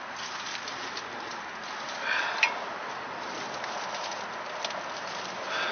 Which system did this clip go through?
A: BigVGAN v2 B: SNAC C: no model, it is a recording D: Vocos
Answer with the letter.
C